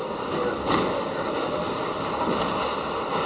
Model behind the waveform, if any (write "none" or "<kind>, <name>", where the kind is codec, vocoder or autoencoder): none